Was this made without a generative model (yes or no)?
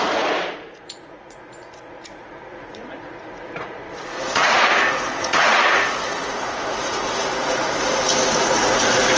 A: no